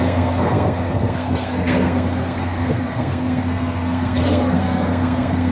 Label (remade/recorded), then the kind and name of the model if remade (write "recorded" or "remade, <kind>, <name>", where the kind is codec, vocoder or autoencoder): remade, codec, SNAC